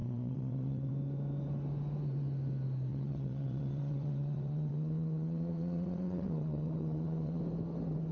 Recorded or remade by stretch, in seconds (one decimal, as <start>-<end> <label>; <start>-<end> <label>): 0.0-0.9 remade; 0.9-2.9 recorded; 2.9-7.4 remade; 7.4-8.1 recorded

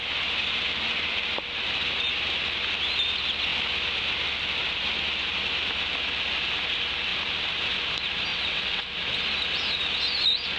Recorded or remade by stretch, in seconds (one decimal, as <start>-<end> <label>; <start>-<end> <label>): 0.0-8.3 recorded; 8.3-8.8 remade; 8.8-10.6 recorded

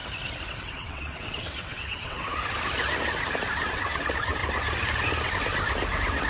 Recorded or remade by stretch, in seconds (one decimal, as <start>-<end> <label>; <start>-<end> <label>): 0.0-0.7 recorded; 0.7-2.3 remade; 2.3-3.7 recorded; 3.7-4.4 remade; 4.4-6.3 recorded

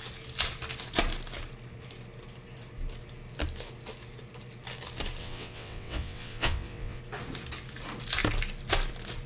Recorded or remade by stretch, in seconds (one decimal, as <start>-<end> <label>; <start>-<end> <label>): 0.0-5.2 recorded; 5.2-7.0 remade; 7.0-9.3 recorded

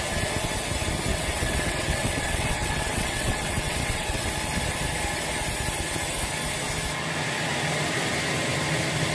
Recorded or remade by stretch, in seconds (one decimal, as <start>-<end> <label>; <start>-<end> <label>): 0.0-1.1 recorded; 1.1-4.3 remade; 4.3-9.1 recorded

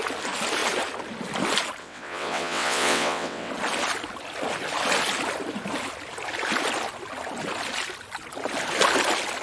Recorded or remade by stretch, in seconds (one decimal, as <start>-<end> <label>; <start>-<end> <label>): 0.0-1.8 recorded; 1.8-3.5 remade; 3.5-9.4 recorded

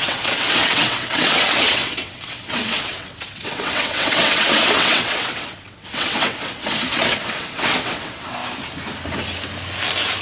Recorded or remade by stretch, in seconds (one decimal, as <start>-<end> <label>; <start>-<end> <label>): 0.0-8.4 remade; 8.4-10.2 recorded

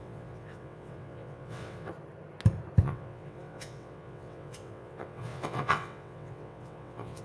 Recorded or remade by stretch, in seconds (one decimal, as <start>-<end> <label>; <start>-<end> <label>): 0.0-1.9 remade; 1.9-2.8 recorded; 2.8-7.2 remade